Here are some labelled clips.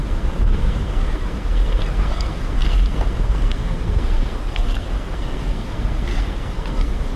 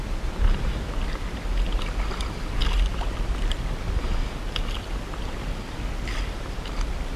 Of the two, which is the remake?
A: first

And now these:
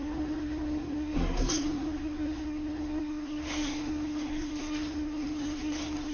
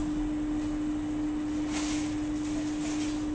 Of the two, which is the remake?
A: first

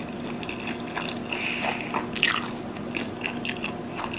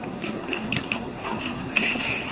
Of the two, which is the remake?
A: second